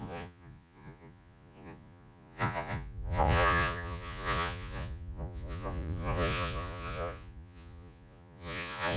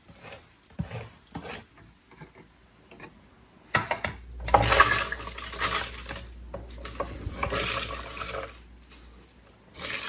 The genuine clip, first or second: second